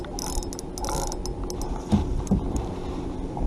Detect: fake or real real